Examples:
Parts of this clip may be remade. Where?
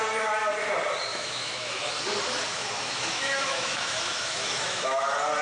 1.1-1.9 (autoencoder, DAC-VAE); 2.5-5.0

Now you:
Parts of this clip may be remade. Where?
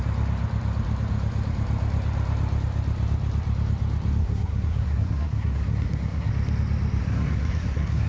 4.2-6.3 (codec, SNAC); 7.0-8.1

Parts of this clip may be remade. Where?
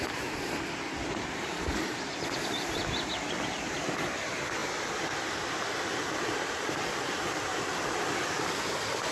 0.0-1.5 (vocoder, BigVGAN v2); 2.4-9.1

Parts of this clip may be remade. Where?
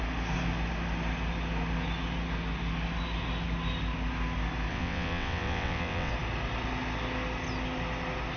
4.7-6.1 (vocoder, WaveNeXt)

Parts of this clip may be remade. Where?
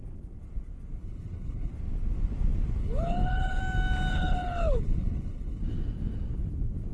1.0-1.7 (codec, HILCodec); 2.8-3.6; 4.1-5.6